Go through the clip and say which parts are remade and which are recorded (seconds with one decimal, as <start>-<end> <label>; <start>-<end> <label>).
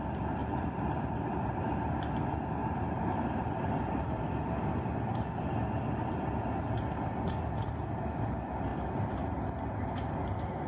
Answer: 0.0-0.4 recorded; 0.4-1.6 remade; 1.6-2.6 recorded; 2.6-4.2 remade; 4.2-10.7 recorded